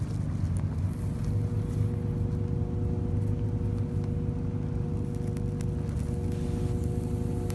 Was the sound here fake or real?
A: real